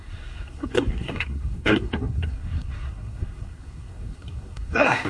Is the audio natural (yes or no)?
no